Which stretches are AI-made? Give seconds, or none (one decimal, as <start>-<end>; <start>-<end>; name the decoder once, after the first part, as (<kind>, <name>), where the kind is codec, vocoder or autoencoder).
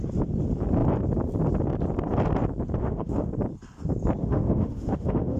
2.8-3.3 (autoencoder, DAC-VAE); 4.2-5.4